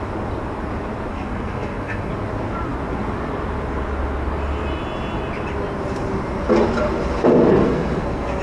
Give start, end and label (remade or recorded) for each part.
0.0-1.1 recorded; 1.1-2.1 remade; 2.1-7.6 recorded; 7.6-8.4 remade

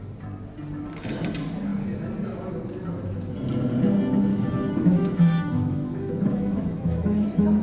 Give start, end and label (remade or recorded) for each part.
0.0-4.3 recorded; 4.3-7.6 remade

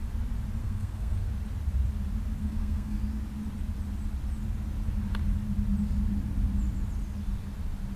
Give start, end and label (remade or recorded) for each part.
0.0-0.6 recorded; 0.6-1.3 remade; 1.3-2.4 recorded; 2.4-3.0 remade; 3.0-8.0 recorded

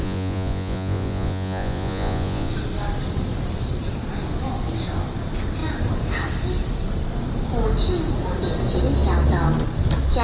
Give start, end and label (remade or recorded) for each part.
0.0-2.5 remade; 2.5-10.2 recorded

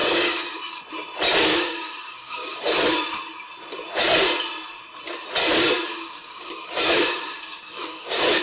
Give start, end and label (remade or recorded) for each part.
0.0-0.8 remade; 0.8-1.5 recorded; 1.5-2.6 remade; 2.6-5.4 recorded; 5.4-8.4 remade

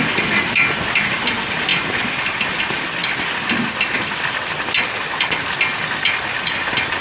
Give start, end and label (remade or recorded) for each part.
0.0-7.0 recorded

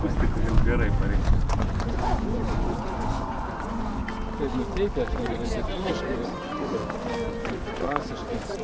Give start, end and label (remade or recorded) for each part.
0.0-0.6 remade; 0.6-1.5 recorded; 1.5-4.0 remade; 4.0-5.2 recorded; 5.2-6.8 remade; 6.8-7.5 recorded; 7.5-8.6 remade